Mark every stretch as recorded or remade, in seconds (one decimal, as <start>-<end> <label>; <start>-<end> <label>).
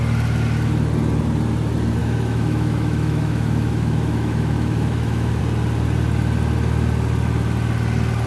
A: 0.0-2.0 recorded; 2.0-5.4 remade; 5.4-8.3 recorded